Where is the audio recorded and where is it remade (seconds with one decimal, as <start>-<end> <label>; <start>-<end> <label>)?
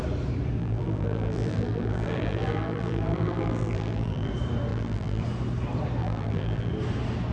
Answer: 0.0-0.6 recorded; 0.6-4.3 remade; 4.3-4.7 recorded; 4.7-5.2 remade; 5.2-6.0 recorded; 6.0-6.7 remade; 6.7-7.3 recorded